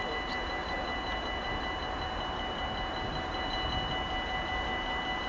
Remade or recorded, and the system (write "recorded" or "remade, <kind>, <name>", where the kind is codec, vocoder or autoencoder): recorded